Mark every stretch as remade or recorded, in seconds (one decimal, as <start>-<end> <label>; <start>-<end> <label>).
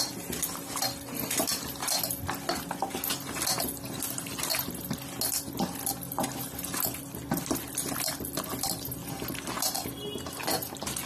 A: 0.0-11.1 recorded